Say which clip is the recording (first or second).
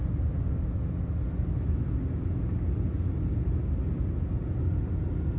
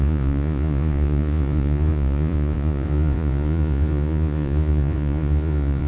first